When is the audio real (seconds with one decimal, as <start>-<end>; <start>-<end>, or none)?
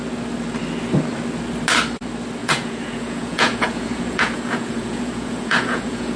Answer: 0.0-2.4